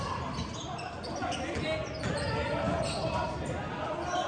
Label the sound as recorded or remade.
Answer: recorded